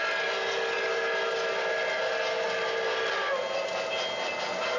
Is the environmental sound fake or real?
real